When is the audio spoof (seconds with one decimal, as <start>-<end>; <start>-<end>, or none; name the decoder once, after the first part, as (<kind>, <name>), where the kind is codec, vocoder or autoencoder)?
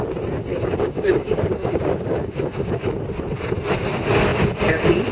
0.5-3.0 (codec, DAC)